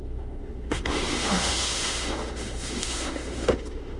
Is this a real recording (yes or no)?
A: no